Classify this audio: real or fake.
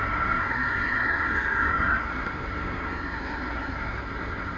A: fake